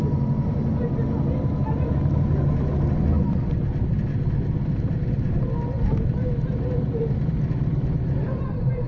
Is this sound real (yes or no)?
yes